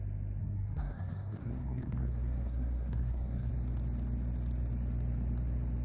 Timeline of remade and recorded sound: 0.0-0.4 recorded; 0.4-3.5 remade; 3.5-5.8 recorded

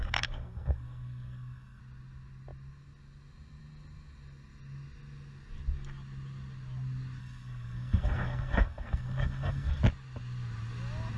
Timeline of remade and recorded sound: 0.0-1.8 remade; 1.8-7.2 recorded; 7.2-9.8 remade; 9.8-11.2 recorded

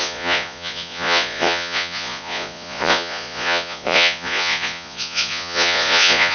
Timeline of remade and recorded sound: 0.0-6.3 remade